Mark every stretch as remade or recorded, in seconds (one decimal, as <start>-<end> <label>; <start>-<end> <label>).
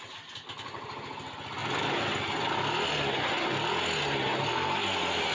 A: 0.0-5.3 recorded